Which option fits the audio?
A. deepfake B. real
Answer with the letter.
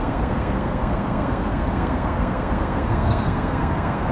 A